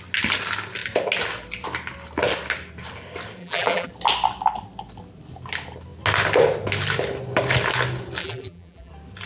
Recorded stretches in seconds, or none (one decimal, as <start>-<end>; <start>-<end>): 0.0-3.4; 3.9-8.2; 8.9-9.3

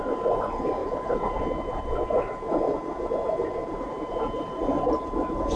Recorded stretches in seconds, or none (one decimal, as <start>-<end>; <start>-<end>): 0.0-0.8; 2.0-3.6; 4.9-5.6

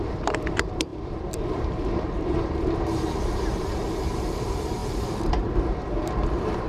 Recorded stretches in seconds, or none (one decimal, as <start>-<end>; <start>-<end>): none

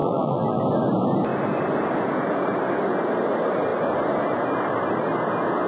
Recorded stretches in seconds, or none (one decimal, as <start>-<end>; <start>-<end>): 0.6-5.7

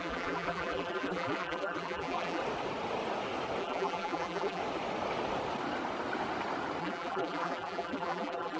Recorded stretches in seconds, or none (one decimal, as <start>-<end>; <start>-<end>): 2.4-3.6; 4.6-6.8

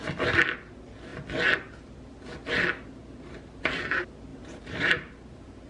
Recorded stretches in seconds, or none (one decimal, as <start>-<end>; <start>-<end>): 0.0-3.0; 3.6-4.3

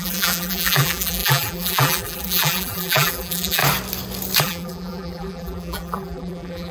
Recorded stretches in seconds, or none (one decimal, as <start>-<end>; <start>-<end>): 3.6-4.4

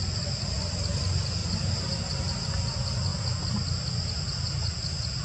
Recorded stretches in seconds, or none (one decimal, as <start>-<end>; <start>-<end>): 0.0-1.4; 2.4-5.2